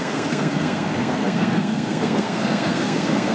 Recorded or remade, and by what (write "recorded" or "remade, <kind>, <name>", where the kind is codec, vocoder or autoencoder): remade, codec, SNAC